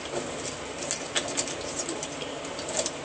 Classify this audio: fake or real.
real